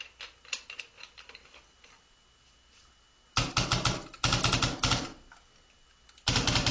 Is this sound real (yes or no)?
yes